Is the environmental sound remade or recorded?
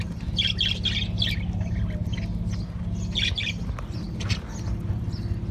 recorded